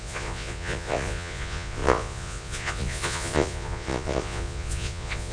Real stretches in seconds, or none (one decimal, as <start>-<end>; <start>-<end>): none